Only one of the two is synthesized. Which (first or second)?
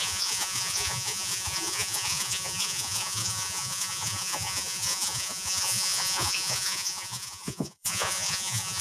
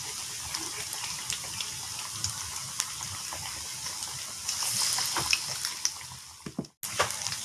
first